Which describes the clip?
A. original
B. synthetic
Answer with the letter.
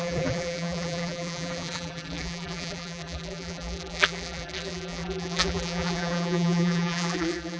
B